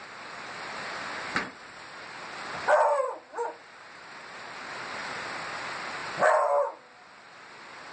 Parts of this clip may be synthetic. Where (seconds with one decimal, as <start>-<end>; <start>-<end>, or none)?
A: none